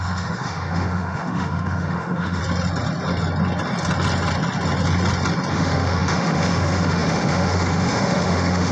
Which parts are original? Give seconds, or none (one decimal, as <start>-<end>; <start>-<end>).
2.4-5.5